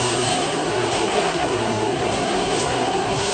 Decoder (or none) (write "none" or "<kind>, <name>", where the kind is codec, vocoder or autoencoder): codec, SNAC